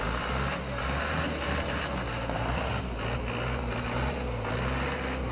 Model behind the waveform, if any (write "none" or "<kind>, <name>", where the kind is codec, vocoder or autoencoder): none